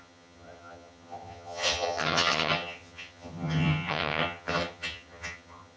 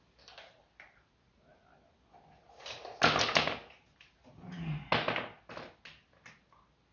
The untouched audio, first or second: second